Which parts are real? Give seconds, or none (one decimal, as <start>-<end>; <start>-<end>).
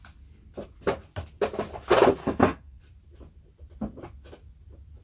0.0-2.2; 2.8-5.0